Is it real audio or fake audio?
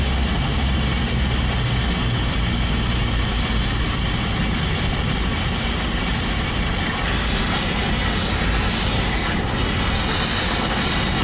real